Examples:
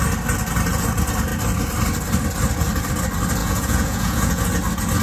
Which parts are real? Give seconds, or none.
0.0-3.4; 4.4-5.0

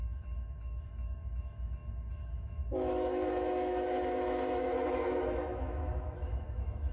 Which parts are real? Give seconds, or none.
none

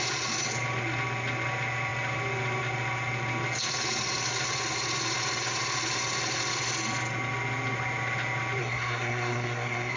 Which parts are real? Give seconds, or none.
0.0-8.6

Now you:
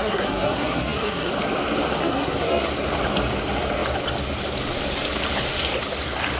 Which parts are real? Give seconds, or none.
1.3-2.0; 2.7-6.4

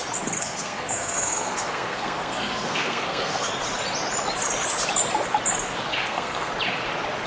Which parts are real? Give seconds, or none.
0.0-0.4; 3.5-5.9; 6.5-7.3

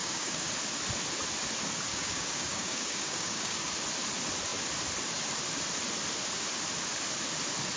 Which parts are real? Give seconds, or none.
0.5-1.9; 3.7-7.8